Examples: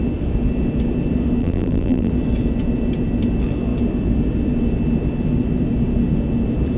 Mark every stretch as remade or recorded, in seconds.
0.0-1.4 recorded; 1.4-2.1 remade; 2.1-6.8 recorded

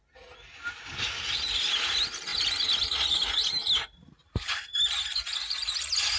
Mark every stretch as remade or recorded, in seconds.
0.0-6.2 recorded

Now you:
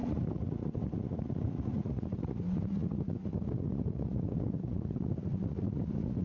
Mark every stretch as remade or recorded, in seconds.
0.0-6.2 remade

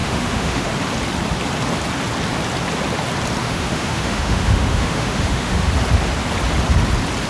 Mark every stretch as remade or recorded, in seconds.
0.0-0.7 remade; 0.7-3.4 recorded; 3.4-5.7 remade; 5.7-7.3 recorded